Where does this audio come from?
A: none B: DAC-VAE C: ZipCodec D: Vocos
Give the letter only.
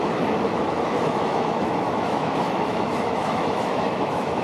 B